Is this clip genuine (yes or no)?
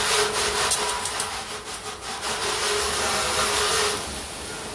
yes